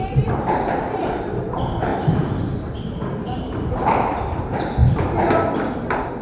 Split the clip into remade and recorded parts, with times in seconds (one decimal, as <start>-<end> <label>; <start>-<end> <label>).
0.0-4.8 remade; 4.8-5.6 recorded; 5.6-6.2 remade